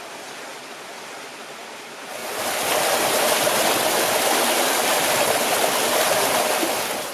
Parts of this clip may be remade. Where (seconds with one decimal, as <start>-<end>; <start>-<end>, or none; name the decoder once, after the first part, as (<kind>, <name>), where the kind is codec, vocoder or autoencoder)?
none